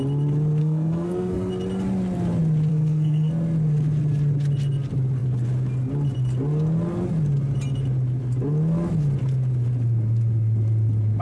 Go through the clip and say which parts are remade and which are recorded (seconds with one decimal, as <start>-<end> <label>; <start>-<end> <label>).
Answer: 0.0-0.6 recorded; 0.6-1.5 remade; 1.5-2.7 recorded; 2.7-3.3 remade; 3.3-11.2 recorded